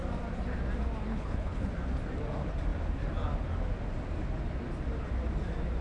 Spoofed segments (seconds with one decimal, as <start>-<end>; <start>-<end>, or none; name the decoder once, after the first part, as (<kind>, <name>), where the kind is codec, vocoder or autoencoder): 1.1-1.7 (codec, HILCodec)